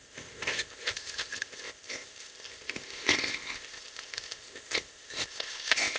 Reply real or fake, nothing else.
fake